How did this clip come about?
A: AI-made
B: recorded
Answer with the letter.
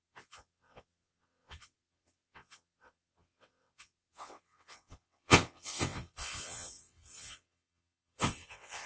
A